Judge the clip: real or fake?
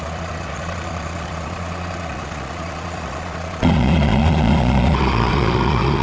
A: fake